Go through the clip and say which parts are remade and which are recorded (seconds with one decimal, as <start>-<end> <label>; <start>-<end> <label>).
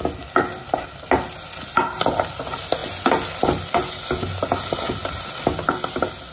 0.0-6.3 recorded